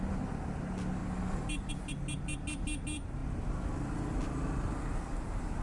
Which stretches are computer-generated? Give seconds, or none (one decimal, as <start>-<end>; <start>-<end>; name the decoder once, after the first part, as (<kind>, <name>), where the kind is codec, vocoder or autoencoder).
1.0-1.7 (vocoder, BigVGAN v2)